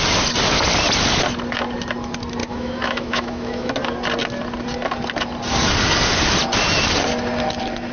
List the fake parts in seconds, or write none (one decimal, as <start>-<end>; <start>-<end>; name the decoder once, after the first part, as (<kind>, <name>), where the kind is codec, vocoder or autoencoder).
2.4-3.7 (autoencoder, DAC-VAE)